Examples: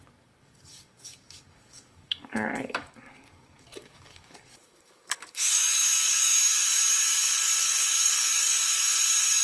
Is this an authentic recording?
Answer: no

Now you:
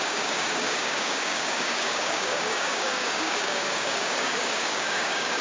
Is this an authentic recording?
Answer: no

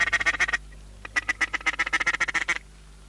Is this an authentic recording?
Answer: yes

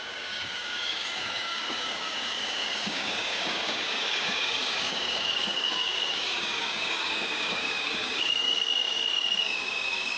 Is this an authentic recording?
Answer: no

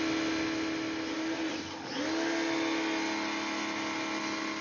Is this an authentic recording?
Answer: yes